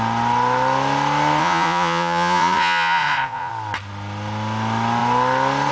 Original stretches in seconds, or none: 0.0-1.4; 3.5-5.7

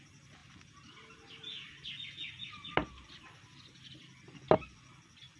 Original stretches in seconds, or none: 0.0-5.4

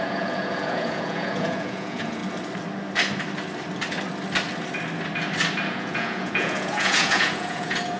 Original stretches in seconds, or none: 2.2-5.7

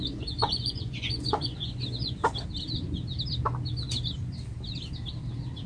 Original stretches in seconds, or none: 2.2-5.7